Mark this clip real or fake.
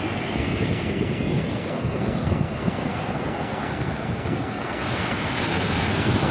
fake